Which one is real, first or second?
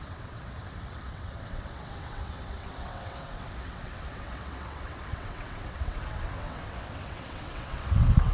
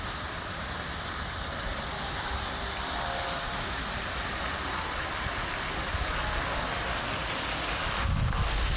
second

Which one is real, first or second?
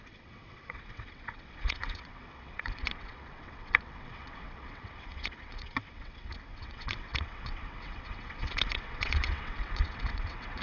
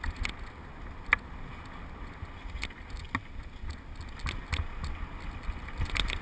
second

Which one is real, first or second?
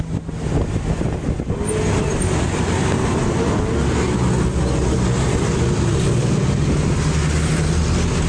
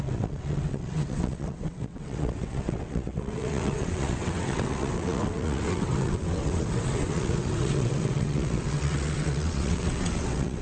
first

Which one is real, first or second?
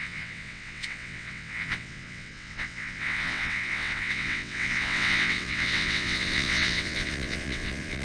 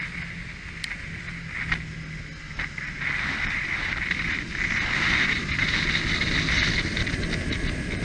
second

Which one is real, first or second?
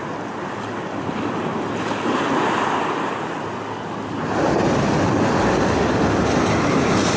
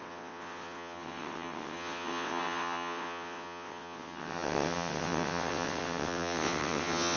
first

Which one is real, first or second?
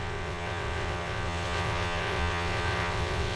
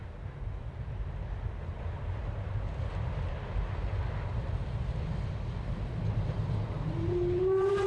second